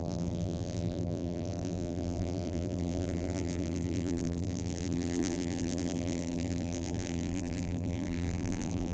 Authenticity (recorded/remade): remade